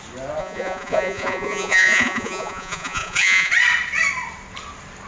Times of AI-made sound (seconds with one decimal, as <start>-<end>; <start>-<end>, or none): 0.4-3.5